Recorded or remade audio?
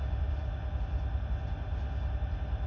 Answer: recorded